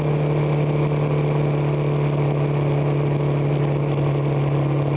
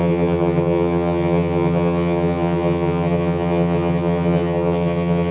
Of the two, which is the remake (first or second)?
second